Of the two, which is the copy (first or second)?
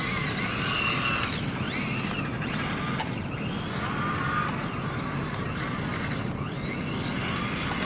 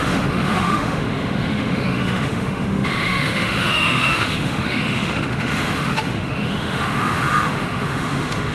second